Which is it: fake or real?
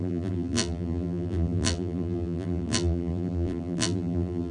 fake